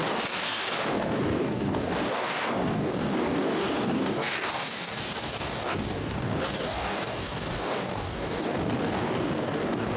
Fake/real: fake